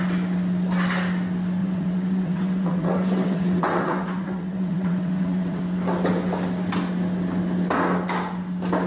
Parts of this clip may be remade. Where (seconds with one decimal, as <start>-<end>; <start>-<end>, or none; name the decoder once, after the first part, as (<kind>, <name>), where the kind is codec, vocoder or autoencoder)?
1.6-5.6 (vocoder, WaveNeXt)